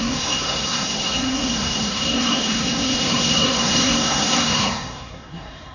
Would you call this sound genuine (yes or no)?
no